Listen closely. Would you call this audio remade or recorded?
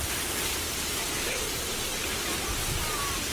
remade